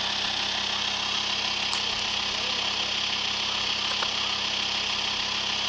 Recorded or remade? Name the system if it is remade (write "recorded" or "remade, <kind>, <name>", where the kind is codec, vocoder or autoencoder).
recorded